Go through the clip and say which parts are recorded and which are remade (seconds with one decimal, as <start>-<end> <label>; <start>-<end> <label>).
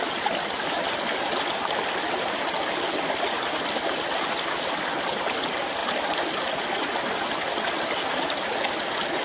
0.0-9.2 recorded